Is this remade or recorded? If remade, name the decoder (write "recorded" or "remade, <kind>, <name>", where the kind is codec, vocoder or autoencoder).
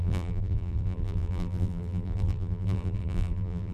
remade, vocoder, BigVGAN v2